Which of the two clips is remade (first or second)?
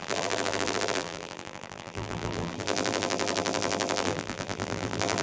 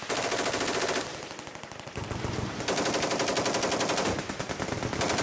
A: first